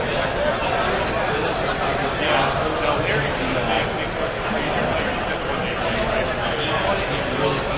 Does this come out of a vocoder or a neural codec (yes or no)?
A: no